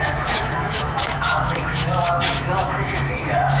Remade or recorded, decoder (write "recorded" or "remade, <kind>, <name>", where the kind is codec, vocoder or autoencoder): remade, autoencoder, DAC-VAE